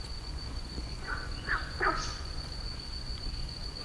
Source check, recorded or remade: remade